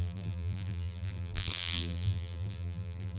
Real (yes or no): no